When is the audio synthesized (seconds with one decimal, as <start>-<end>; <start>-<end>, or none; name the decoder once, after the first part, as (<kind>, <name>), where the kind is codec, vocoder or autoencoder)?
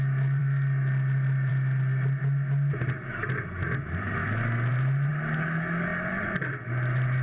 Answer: none